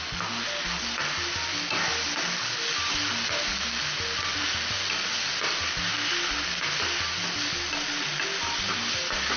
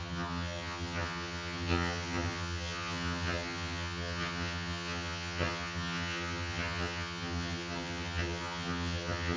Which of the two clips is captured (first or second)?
first